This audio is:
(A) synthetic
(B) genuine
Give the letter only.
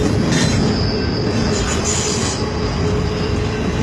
B